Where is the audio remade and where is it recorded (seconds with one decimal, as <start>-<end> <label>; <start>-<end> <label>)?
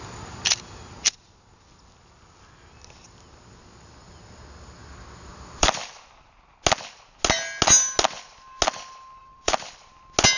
0.0-5.3 recorded; 5.3-6.0 remade; 6.0-9.2 recorded; 9.2-10.0 remade; 10.0-10.4 recorded